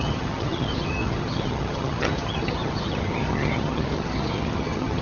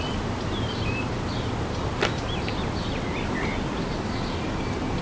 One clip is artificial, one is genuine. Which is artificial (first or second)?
first